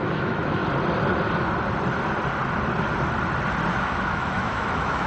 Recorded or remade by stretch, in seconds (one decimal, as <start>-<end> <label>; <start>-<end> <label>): 0.0-0.6 remade; 0.6-3.7 recorded; 3.7-5.1 remade